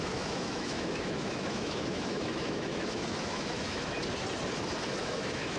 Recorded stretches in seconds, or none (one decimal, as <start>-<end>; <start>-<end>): 4.0-5.0